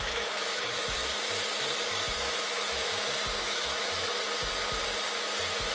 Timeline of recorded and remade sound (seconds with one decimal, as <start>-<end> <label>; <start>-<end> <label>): 0.0-1.0 remade; 1.0-2.1 recorded; 2.1-2.9 remade; 2.9-3.4 recorded; 3.4-4.1 remade; 4.1-5.7 recorded